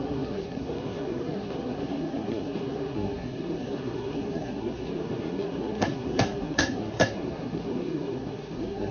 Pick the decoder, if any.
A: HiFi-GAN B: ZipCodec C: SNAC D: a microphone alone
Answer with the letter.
C